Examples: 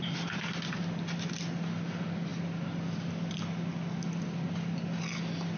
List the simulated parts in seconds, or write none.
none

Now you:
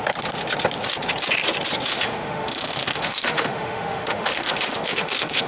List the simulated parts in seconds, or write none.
1.9-5.5 (autoencoder, DAC-VAE)

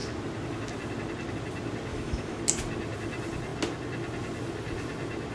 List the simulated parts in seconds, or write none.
1.9-2.4 (autoencoder, DAC-VAE)

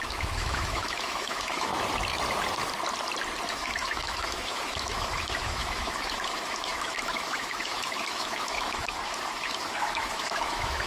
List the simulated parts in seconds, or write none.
0.0-1.7 (autoencoder, DAC-VAE); 3.5-10.9